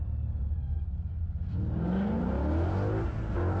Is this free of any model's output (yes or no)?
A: yes